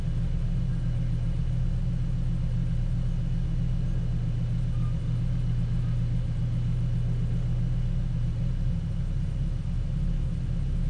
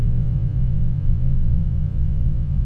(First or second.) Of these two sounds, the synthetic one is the second